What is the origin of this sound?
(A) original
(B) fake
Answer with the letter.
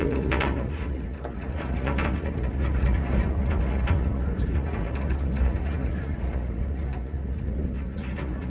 B